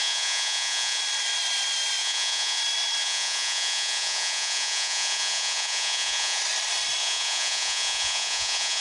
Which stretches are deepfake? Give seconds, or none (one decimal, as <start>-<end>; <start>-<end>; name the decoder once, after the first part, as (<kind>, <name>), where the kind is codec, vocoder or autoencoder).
0.0-1.0 (vocoder, Vocos); 2.0-2.6; 3.0-6.4; 7.0-8.8